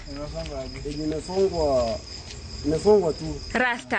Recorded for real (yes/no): yes